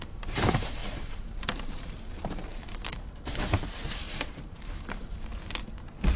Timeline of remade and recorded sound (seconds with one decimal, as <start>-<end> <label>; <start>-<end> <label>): 0.0-5.3 remade; 5.3-6.2 recorded